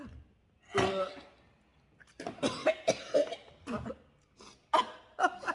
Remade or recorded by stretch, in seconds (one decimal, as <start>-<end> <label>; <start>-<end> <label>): 0.0-5.5 recorded